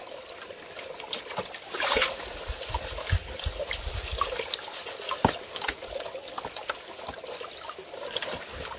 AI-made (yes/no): no